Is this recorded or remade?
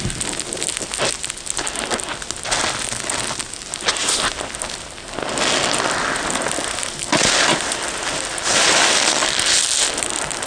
recorded